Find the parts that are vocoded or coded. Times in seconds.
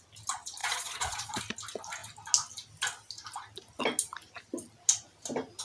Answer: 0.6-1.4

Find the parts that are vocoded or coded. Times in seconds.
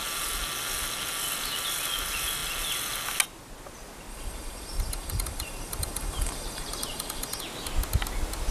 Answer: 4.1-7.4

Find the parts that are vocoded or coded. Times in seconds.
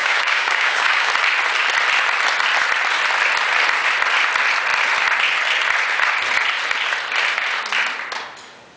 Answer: 0.0-1.1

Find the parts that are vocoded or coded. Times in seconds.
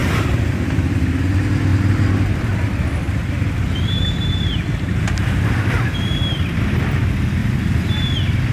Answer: 0.0-1.2; 1.7-6.6; 7.4-7.9